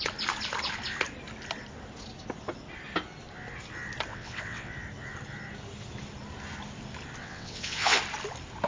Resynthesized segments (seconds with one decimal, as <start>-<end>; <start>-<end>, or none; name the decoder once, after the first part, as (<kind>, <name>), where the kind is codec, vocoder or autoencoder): 4.1-4.7 (vocoder, WaveNeXt); 7.2-8.0